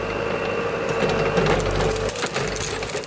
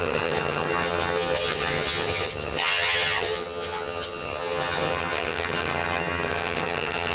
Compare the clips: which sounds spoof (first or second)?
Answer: second